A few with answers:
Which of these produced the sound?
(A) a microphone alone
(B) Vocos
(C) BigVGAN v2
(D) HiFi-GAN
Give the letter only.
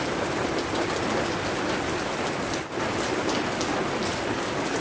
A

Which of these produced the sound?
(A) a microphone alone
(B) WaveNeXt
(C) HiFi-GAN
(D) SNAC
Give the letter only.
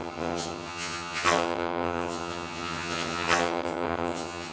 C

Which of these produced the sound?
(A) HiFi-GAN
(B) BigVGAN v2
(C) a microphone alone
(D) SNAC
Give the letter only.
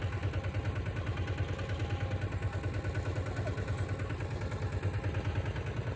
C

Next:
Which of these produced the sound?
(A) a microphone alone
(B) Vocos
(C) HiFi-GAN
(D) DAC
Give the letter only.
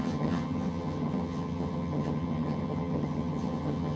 C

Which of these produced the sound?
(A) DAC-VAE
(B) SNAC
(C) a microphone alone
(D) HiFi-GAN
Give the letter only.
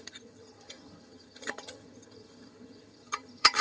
D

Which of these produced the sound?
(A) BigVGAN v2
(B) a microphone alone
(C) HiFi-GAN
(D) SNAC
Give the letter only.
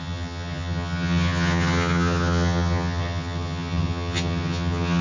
C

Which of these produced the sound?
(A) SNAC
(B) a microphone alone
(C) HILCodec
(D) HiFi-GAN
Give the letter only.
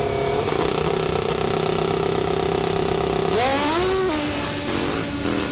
B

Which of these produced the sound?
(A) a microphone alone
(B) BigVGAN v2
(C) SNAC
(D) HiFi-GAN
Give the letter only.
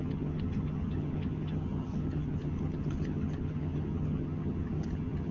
D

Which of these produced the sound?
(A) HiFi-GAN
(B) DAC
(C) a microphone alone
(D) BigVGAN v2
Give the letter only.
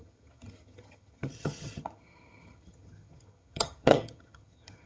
A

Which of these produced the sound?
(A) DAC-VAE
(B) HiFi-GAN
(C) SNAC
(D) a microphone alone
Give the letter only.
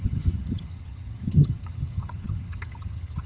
B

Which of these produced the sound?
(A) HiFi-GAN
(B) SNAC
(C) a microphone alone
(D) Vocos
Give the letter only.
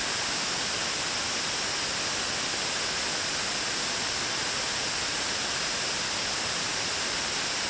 C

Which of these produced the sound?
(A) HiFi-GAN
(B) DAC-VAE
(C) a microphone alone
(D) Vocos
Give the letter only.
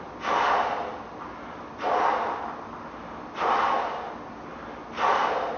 C